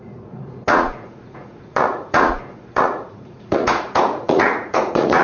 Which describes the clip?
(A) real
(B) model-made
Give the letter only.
B